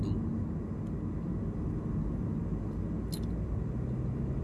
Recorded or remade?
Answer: recorded